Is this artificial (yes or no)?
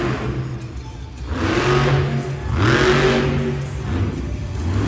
no